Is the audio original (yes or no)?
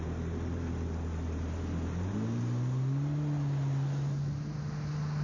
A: yes